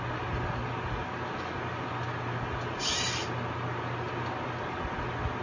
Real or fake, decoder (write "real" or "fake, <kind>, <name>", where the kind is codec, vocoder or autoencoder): real